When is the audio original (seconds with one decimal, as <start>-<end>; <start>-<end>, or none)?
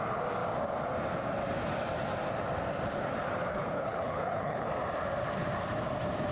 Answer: 0.0-3.5; 4.7-6.3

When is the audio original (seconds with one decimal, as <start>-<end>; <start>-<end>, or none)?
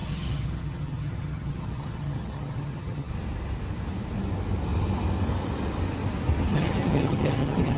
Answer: 3.1-6.5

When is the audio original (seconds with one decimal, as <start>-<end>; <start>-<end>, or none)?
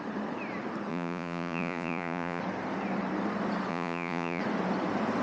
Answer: 0.0-0.9; 2.4-3.7; 4.4-5.2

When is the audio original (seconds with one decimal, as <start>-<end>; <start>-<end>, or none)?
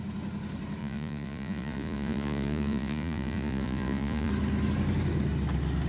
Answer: 0.0-0.8; 4.3-5.9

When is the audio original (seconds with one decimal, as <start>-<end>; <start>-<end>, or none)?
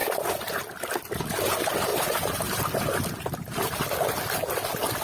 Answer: 0.0-1.9; 2.6-5.0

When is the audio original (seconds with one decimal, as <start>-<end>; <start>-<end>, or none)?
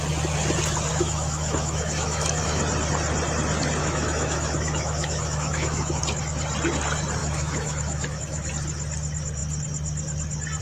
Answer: 0.0-0.9; 2.6-3.8; 6.0-7.2; 8.5-10.6